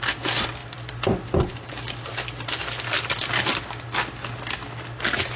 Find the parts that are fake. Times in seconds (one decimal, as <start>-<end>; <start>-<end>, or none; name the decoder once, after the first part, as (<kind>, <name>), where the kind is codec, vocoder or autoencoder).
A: none